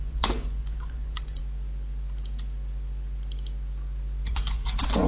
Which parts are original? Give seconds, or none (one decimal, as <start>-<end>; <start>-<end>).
1.4-4.3